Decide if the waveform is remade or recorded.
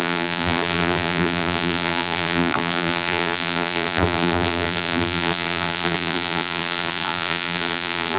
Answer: remade